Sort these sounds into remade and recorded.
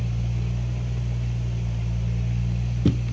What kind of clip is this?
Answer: recorded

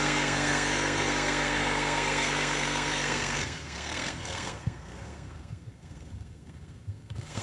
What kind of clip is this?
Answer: remade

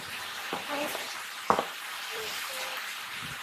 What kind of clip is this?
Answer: remade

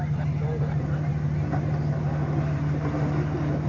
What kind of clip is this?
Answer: recorded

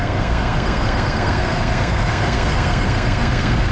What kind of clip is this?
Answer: remade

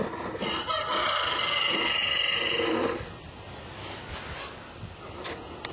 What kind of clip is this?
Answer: recorded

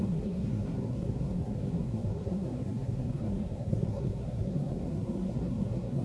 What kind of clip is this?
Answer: remade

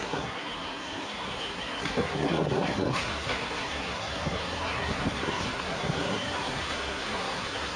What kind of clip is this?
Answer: remade